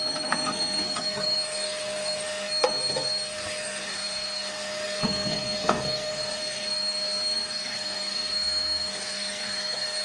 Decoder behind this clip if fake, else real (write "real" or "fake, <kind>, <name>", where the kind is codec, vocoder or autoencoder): fake, codec, SNAC